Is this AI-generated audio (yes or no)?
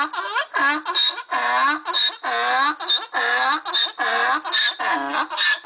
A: no